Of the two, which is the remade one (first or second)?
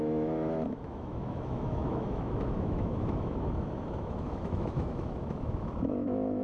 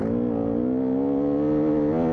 first